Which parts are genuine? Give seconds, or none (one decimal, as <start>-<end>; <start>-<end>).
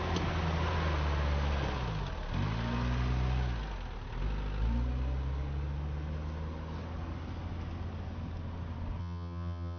0.0-9.0